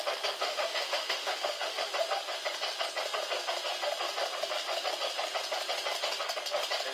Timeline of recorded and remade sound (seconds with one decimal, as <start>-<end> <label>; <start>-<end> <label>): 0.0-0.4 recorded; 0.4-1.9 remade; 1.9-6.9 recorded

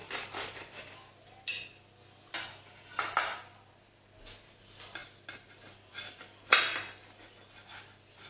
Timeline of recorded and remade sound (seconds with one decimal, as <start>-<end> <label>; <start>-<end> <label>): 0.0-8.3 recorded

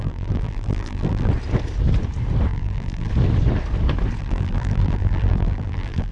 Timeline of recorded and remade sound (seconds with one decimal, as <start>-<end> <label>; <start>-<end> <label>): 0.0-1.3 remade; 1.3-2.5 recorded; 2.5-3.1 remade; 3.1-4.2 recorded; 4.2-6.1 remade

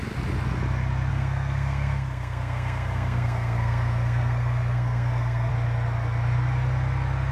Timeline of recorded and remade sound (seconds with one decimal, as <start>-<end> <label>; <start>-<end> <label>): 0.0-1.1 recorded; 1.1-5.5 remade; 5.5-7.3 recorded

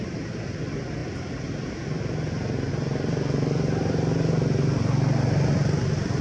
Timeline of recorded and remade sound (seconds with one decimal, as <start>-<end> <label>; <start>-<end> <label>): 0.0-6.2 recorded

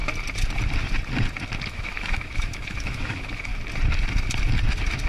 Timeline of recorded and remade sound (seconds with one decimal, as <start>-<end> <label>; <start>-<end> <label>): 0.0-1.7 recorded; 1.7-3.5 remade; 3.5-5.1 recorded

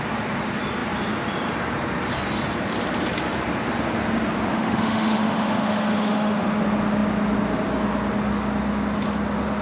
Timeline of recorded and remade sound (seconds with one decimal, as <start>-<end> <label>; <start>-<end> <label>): 0.0-4.5 recorded; 4.5-6.6 remade; 6.6-9.6 recorded